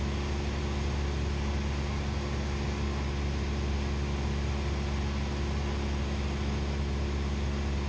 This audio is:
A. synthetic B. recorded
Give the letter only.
B